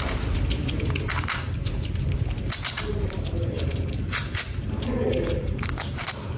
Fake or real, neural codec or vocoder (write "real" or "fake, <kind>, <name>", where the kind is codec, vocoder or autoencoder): fake, vocoder, BigVGAN v2